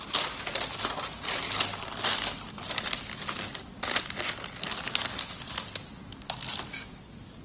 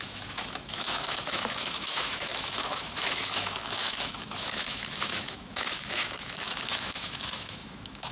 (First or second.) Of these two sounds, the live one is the first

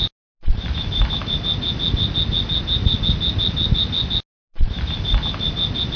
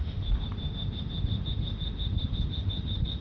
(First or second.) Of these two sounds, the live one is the first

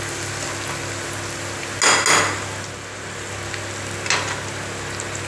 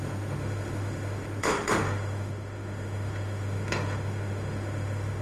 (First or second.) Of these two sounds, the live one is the first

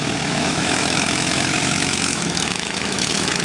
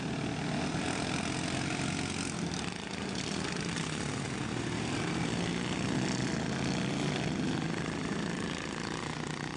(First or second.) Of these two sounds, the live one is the second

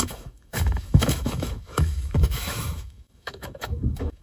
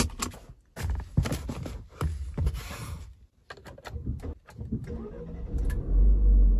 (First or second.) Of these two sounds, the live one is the second